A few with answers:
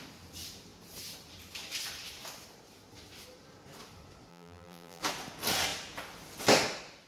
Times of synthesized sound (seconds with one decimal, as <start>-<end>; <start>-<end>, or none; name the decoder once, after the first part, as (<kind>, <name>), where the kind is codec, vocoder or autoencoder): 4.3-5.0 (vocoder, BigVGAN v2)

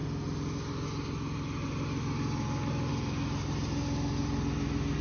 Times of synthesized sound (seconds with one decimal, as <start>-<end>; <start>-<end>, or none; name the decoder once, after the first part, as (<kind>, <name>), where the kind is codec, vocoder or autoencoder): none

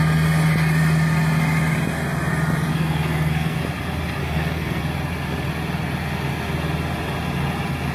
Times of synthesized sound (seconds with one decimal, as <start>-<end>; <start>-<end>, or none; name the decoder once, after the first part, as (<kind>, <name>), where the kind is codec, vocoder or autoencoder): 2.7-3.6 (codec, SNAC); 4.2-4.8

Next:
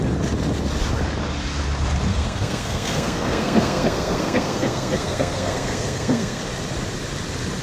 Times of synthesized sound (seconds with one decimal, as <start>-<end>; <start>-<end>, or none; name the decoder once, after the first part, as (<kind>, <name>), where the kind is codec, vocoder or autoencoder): 2.1-6.4 (codec, SNAC)